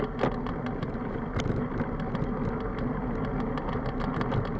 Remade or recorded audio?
recorded